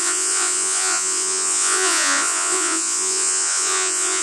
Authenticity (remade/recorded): remade